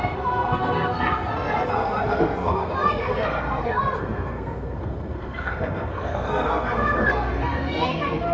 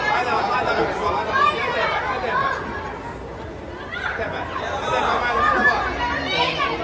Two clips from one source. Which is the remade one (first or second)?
first